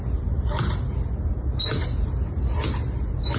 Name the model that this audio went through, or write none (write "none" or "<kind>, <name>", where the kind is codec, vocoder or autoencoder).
none